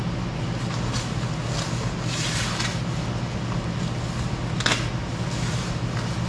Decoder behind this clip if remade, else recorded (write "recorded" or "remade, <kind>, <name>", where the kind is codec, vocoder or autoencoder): recorded